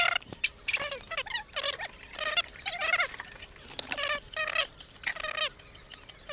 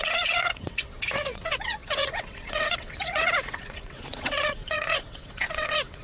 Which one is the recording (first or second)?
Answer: first